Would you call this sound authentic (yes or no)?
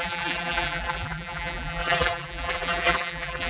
no